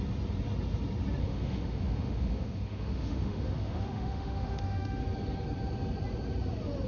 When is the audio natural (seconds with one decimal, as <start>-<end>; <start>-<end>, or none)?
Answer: 0.0-1.2; 5.0-6.9

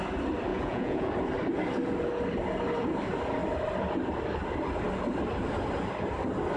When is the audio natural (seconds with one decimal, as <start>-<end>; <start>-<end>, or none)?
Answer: 0.0-0.5; 1.1-6.6

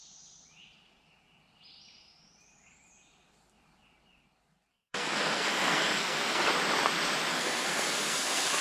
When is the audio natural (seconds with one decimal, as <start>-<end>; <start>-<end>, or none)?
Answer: 0.0-4.7; 6.5-7.3

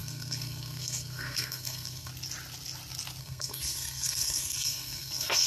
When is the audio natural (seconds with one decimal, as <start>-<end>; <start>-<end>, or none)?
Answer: 2.1-3.2